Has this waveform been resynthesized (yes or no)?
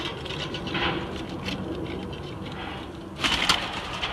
no